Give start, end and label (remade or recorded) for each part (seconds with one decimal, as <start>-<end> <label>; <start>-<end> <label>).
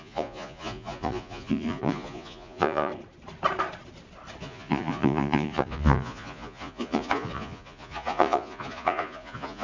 0.0-2.9 remade; 2.9-4.4 recorded; 4.4-9.6 remade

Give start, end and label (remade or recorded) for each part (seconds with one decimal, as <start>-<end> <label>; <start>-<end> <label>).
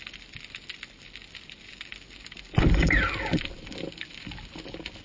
0.0-5.0 recorded